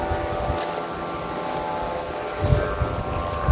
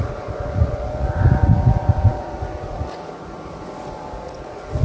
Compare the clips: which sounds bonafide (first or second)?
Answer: first